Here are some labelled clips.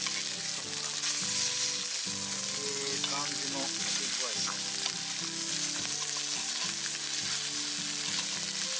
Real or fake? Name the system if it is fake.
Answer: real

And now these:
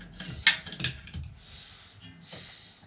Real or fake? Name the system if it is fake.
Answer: real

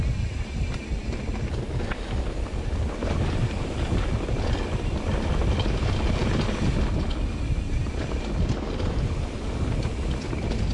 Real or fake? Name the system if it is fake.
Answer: real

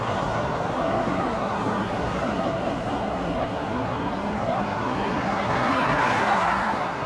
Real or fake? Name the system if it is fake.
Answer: fake, codec, SNAC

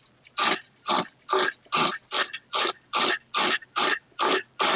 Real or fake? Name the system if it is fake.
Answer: real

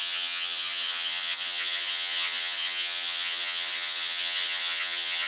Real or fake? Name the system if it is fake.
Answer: fake, vocoder, HiFi-GAN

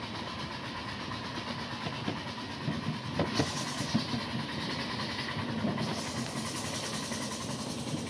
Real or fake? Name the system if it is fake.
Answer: real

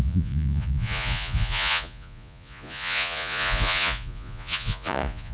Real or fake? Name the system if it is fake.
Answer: fake, vocoder, Vocos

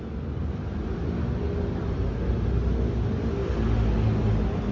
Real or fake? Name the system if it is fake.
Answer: real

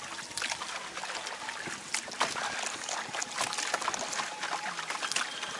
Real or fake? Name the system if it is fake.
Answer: real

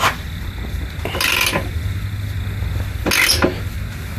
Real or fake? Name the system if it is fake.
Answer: real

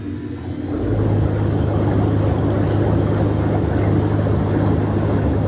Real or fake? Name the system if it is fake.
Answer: real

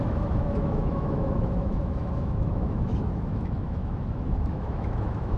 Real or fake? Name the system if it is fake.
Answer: fake, autoencoder, DAC-VAE